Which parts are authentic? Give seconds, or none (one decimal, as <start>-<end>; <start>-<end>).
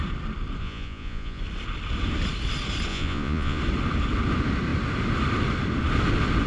0.0-0.6; 1.4-2.9; 3.6-6.5